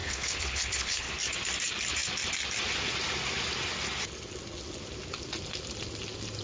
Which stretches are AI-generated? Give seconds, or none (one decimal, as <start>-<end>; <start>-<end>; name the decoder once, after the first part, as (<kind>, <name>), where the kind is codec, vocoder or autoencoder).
0.0-1.1 (codec, HILCodec)